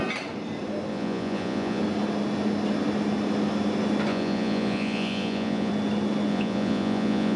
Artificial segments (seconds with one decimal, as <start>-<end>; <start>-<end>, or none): 0.9-1.8; 4.1-5.7; 6.3-7.4